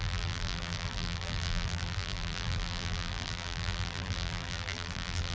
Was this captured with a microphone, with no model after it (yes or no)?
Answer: no